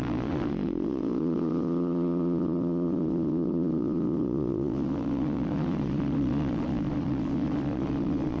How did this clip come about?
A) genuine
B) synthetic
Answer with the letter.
B